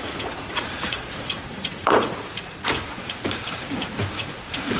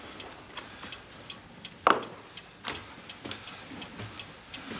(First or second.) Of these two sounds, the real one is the second